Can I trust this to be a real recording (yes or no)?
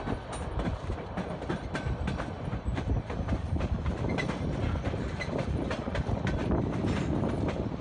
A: yes